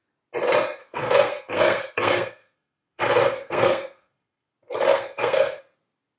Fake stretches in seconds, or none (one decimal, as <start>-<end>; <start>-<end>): 0.8-4.5; 4.9-5.6